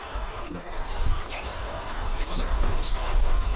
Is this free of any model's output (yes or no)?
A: no